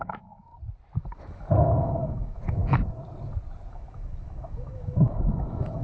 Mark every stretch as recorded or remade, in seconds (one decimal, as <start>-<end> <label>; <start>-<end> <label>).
0.0-0.5 remade; 0.5-1.2 recorded; 1.2-2.6 remade; 2.6-3.7 recorded; 3.7-5.8 remade